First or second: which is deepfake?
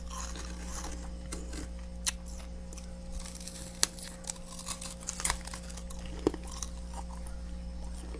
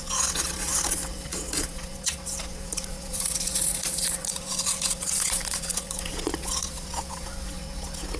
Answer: second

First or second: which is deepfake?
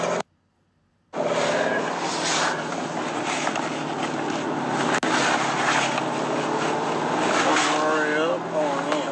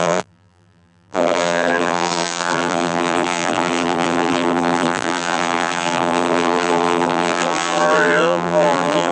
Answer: second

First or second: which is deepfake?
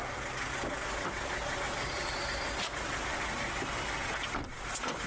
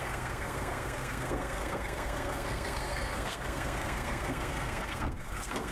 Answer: second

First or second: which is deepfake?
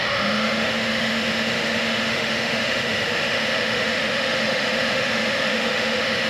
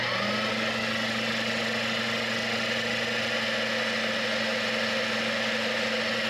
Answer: first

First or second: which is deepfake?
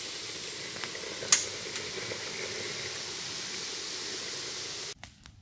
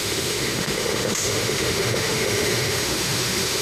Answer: second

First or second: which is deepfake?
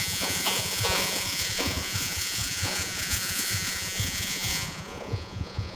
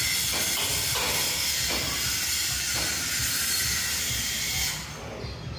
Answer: first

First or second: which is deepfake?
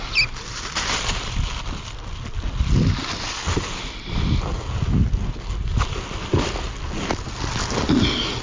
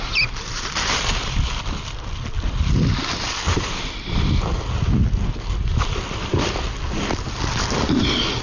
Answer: second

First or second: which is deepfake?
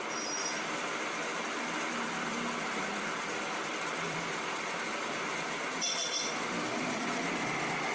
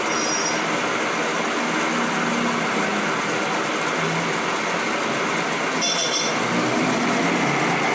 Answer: first